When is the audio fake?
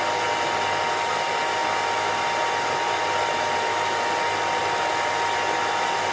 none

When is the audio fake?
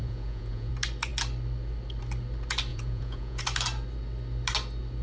0.0-0.7 (vocoder, Vocos); 2.7-3.4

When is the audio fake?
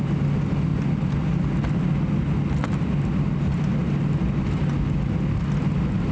none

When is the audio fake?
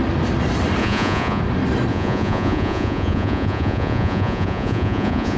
0.8-1.4 (vocoder, Vocos); 1.9-5.4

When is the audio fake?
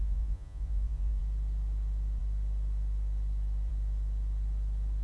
0.0-1.2 (vocoder, Vocos)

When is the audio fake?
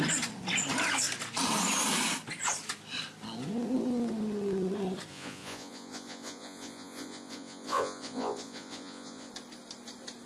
5.1-9.3 (vocoder, Vocos)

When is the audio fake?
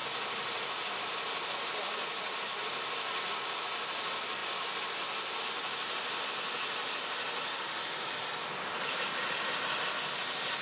none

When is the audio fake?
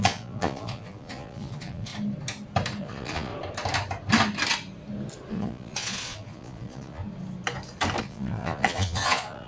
0.0-1.9 (vocoder, Vocos); 2.8-3.3; 5.3-7.0; 8.0-9.5